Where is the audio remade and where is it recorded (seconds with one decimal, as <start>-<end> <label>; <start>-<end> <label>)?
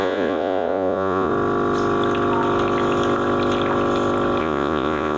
0.0-1.3 remade; 1.3-4.4 recorded; 4.4-5.2 remade